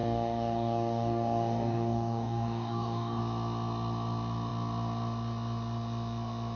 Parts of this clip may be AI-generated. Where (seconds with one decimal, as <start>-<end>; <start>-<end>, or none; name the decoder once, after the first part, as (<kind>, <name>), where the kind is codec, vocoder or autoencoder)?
0.0-3.2 (codec, DAC)